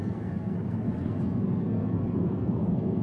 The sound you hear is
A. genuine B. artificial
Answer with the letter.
B